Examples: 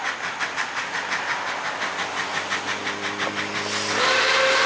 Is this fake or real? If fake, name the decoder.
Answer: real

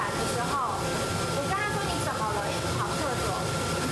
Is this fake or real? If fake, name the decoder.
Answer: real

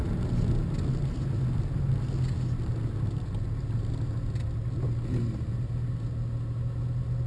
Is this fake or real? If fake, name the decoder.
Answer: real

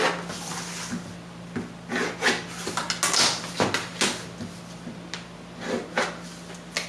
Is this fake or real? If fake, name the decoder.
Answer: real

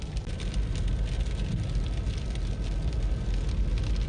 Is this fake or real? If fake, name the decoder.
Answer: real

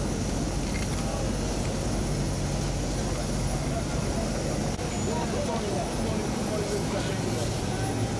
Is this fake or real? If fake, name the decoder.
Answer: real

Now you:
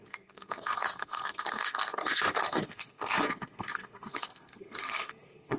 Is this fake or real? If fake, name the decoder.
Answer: fake, codec, SNAC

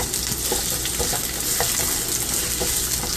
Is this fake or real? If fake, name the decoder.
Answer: real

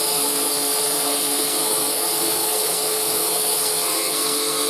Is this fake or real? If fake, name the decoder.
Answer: fake, codec, SNAC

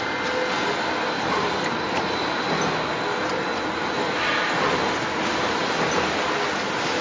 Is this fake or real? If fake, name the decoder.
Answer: real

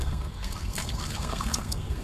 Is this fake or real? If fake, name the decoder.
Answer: fake, codec, SNAC